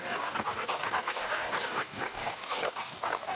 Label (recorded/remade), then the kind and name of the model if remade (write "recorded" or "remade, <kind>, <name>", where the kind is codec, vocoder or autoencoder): remade, codec, DAC